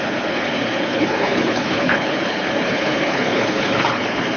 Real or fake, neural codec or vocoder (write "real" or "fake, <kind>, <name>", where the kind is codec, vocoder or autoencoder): fake, codec, HILCodec